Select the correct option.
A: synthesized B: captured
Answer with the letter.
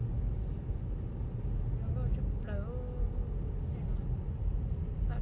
B